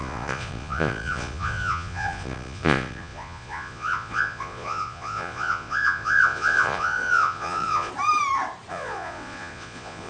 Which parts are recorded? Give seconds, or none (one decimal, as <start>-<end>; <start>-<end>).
7.9-8.7